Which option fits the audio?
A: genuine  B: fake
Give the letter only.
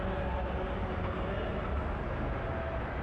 A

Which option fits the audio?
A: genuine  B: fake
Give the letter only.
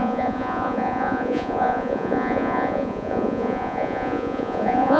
B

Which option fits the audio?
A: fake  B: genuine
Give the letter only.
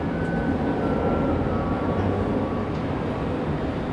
B